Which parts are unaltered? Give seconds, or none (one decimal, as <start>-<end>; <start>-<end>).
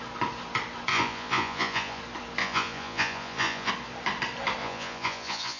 0.0-0.9; 2.0-2.4; 3.7-4.6